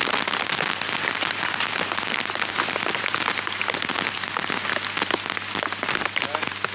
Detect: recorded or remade recorded